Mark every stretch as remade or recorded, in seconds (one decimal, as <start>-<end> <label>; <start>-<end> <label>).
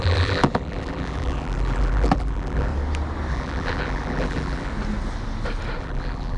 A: 0.0-2.7 remade; 2.7-3.3 recorded; 3.3-4.7 remade; 4.7-5.8 recorded; 5.8-6.4 remade